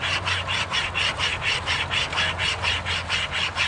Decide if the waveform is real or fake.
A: real